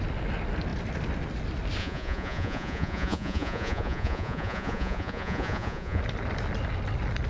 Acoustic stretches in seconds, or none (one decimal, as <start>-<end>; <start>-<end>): 0.0-1.8; 6.0-7.3